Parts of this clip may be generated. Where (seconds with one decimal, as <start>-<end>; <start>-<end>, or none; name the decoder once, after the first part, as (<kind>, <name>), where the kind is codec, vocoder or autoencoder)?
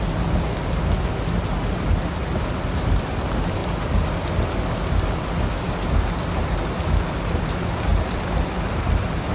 7.9-9.3 (vocoder, BigVGAN v2)